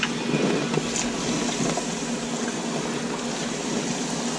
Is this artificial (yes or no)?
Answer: no